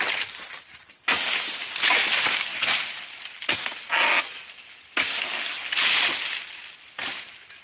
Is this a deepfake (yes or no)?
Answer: no